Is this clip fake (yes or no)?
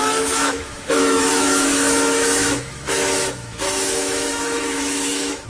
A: yes